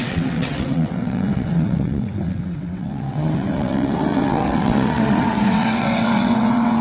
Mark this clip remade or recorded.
remade